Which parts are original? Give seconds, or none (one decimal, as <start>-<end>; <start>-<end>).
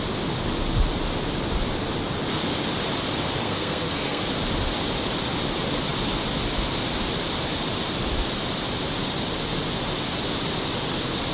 0.0-3.4; 4.2-11.3